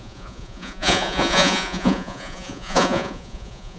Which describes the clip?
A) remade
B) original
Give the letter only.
A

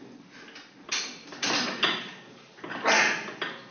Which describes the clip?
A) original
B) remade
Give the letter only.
A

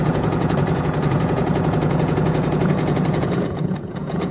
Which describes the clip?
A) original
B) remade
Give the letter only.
B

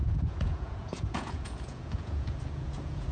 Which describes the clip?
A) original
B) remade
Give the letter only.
B